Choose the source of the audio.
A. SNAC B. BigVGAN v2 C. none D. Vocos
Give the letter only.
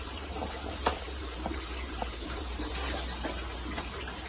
B